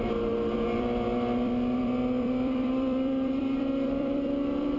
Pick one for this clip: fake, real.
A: fake